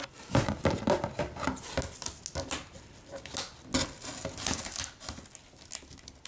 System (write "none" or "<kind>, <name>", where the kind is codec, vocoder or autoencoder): none